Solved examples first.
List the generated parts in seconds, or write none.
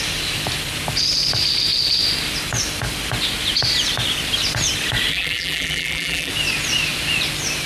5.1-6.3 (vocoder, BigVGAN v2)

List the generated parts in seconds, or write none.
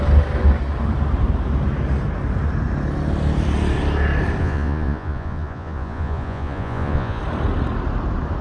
4.4-7.2 (vocoder, Vocos)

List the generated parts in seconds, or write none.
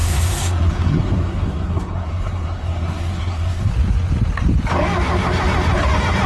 0.0-3.7 (codec, SNAC)